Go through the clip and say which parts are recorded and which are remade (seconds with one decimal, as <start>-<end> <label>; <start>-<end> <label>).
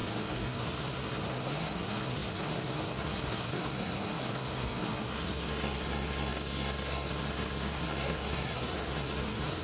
0.0-9.6 remade